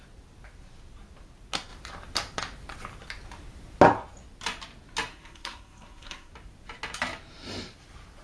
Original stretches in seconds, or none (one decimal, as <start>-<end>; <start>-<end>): 0.0-5.1; 6.3-8.2